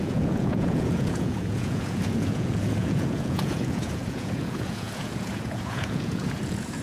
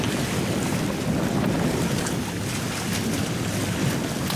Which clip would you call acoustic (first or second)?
second